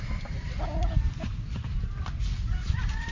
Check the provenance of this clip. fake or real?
real